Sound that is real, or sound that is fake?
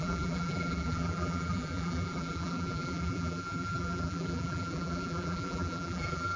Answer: fake